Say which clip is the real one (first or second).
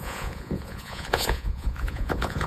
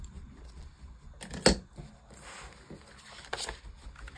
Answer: second